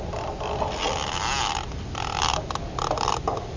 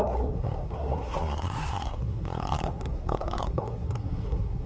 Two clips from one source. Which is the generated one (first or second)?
second